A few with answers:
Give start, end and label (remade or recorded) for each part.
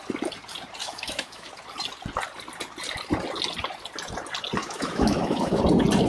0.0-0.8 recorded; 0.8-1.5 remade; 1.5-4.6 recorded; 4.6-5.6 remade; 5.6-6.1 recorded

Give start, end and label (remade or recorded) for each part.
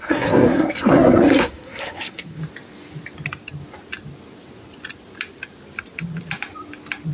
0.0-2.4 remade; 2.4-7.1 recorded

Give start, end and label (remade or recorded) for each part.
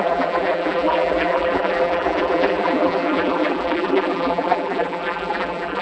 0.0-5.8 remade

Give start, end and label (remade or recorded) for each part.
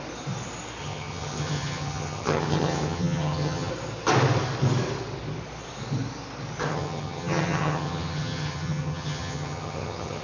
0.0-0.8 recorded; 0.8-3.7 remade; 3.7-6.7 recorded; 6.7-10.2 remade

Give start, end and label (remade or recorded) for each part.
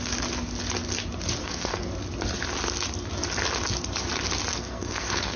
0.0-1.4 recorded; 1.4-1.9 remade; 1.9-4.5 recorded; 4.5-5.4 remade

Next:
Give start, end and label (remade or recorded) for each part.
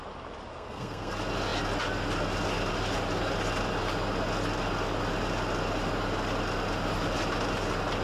0.0-0.5 recorded; 0.5-1.1 remade; 1.1-8.0 recorded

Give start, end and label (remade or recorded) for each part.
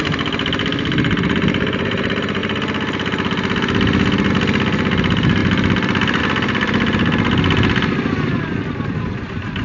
0.0-9.6 recorded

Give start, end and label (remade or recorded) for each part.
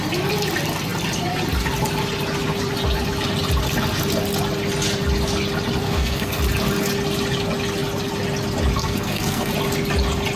0.0-5.8 recorded; 5.8-6.4 remade; 6.4-8.8 recorded; 8.8-9.5 remade; 9.5-10.4 recorded